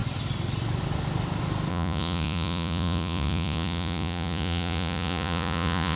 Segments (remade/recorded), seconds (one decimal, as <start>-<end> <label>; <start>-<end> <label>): 0.0-1.7 recorded; 1.7-6.0 remade